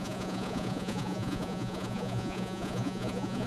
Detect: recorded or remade remade